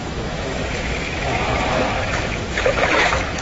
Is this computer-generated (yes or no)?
yes